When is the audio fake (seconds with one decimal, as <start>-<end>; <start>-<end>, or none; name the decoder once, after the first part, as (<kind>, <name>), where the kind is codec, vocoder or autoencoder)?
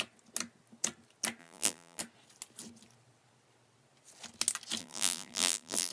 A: 1.4-2.0 (vocoder, BigVGAN v2); 4.8-5.9